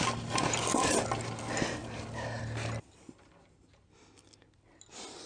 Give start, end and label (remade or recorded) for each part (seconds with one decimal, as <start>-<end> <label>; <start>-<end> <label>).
0.0-5.3 recorded